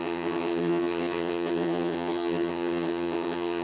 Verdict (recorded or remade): remade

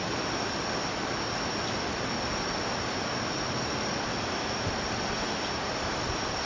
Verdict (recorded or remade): recorded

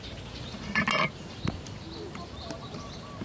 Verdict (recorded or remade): recorded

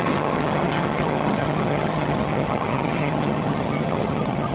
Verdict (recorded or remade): remade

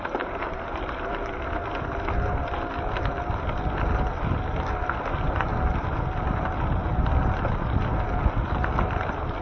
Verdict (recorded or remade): recorded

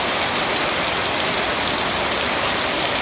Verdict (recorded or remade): recorded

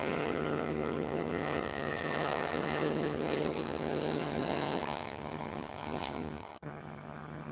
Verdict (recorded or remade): remade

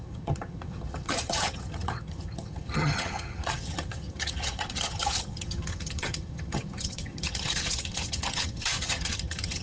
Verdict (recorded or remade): remade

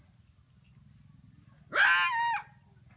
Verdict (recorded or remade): recorded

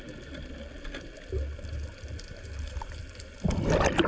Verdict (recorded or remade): recorded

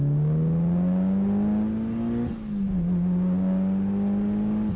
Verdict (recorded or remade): recorded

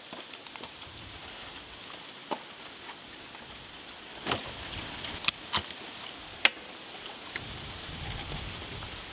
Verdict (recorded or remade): recorded